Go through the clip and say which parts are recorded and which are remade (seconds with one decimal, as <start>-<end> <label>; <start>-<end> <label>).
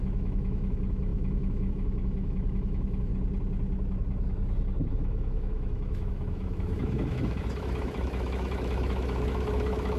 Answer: 0.0-3.1 remade; 3.1-4.9 recorded; 4.9-10.0 remade